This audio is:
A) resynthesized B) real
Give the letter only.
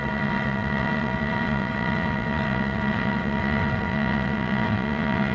A